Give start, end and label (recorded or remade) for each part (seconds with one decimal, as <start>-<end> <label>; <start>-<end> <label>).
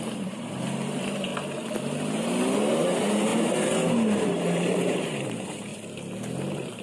0.0-1.3 remade; 1.3-2.6 recorded; 2.6-3.3 remade; 3.3-4.2 recorded; 4.2-5.7 remade; 5.7-6.8 recorded